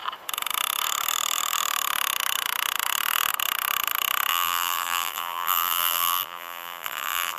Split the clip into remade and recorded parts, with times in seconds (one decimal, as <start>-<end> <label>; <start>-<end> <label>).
0.0-4.3 recorded; 4.3-7.4 remade